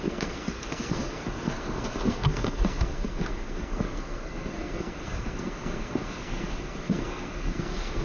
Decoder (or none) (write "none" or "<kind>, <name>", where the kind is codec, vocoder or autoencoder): codec, SNAC